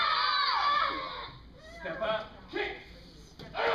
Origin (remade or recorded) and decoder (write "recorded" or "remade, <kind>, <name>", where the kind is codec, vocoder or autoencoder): recorded